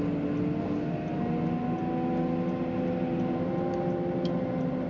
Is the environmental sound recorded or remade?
recorded